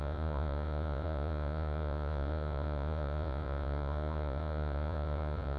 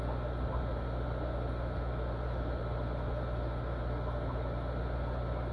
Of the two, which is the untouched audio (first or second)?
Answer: second